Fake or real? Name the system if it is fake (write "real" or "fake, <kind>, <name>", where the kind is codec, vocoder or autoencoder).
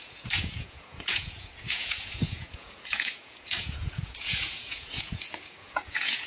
fake, vocoder, Vocos